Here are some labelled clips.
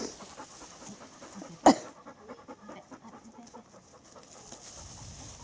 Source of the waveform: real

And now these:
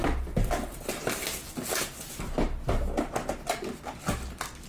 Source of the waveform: real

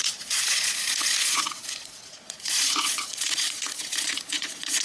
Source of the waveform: fake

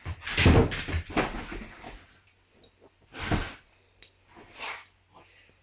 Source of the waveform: real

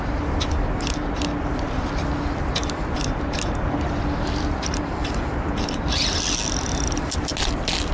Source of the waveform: real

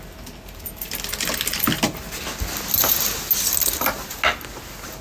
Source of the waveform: real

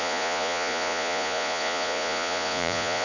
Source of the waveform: fake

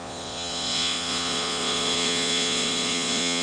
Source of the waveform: fake